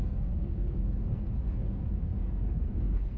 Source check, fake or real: fake